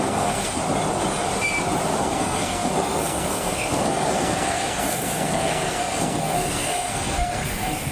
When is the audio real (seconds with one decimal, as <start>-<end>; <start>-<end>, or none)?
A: 0.6-2.0